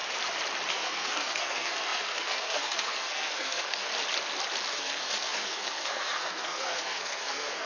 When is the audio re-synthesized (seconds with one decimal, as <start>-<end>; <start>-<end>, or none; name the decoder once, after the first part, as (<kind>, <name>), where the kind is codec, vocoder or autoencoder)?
0.7-3.9 (codec, SNAC); 4.7-7.7